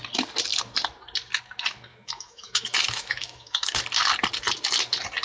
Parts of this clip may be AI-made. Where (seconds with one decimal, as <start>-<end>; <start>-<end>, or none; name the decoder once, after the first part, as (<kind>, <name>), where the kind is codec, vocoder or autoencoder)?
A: 1.9-3.8 (autoencoder, DAC-VAE)

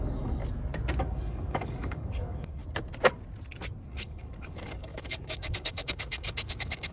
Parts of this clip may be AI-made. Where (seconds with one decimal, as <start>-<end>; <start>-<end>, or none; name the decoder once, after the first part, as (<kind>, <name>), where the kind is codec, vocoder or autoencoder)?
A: 0.0-0.4 (codec, DAC); 1.0-2.6; 3.9-6.9

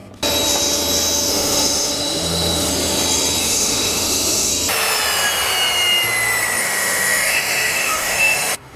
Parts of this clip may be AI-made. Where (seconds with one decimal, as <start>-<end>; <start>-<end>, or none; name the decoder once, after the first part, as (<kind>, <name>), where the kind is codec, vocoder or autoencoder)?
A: 1.3-2.7 (autoencoder, DAC-VAE); 3.4-4.5; 6.6-8.8

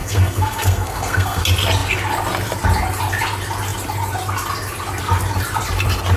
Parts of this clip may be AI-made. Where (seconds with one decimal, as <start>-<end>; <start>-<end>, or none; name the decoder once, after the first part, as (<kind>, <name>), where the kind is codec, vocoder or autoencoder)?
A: 0.0-1.4 (codec, SNAC)

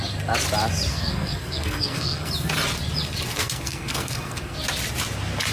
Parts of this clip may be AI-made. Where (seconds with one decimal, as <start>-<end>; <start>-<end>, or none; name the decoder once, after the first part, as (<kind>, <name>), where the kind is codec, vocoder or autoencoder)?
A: 0.9-2.3 (codec, SNAC); 3.3-4.6

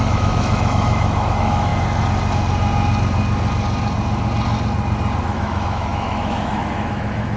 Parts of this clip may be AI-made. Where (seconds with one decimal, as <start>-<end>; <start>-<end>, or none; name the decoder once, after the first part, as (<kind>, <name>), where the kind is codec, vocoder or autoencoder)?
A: 0.0-1.7 (autoencoder, DAC-VAE); 5.2-7.4